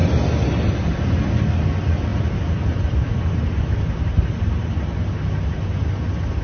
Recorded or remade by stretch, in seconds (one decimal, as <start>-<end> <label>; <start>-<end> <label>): 0.0-2.1 recorded; 2.1-5.9 remade; 5.9-6.4 recorded

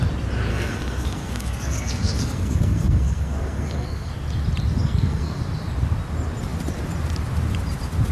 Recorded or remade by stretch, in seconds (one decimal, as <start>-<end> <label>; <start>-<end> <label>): 0.0-0.5 recorded; 0.5-4.1 remade; 4.1-4.8 recorded; 4.8-5.4 remade; 5.4-8.1 recorded

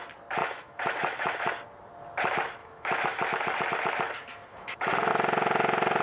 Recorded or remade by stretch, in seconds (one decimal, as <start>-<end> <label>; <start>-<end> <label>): 0.0-0.4 recorded; 0.4-1.5 remade; 1.5-2.6 recorded; 2.6-3.2 remade; 3.2-4.5 recorded; 4.5-5.1 remade; 5.1-6.0 recorded

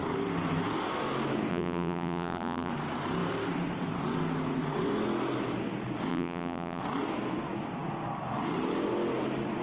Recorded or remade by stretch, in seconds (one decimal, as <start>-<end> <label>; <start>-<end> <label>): 0.0-1.5 recorded; 1.5-2.7 remade; 2.7-6.1 recorded; 6.1-6.8 remade; 6.8-9.6 recorded

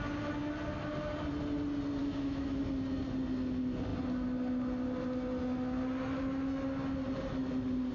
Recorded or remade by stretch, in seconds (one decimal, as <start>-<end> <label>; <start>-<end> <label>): 0.0-2.0 recorded; 2.0-2.6 remade; 2.6-7.9 recorded